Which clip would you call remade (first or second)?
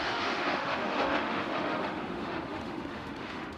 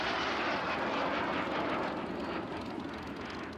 first